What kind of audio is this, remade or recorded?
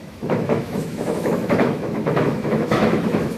remade